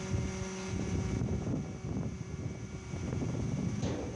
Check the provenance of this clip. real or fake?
real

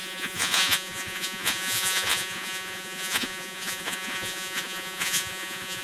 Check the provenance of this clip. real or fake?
fake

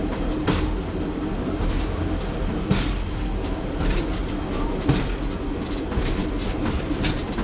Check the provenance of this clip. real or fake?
real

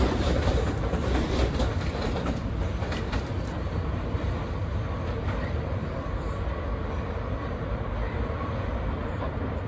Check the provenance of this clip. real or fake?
fake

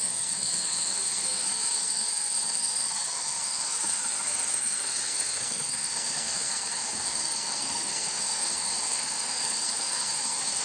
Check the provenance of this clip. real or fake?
fake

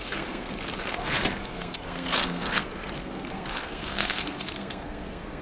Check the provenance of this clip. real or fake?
fake